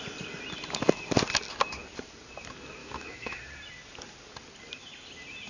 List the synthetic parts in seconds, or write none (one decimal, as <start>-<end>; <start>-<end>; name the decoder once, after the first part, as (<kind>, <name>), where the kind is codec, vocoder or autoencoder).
2.8-3.4 (autoencoder, DAC-VAE)

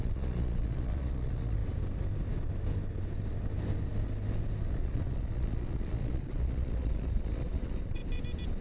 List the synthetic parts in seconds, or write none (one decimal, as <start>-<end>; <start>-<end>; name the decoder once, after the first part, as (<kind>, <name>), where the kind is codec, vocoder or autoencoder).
0.0-1.6 (vocoder, Vocos); 4.7-8.0

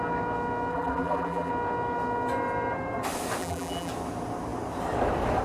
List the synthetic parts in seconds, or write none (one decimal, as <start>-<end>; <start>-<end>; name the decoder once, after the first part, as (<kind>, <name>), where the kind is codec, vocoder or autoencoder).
0.7-1.5 (vocoder, BigVGAN v2); 3.4-3.9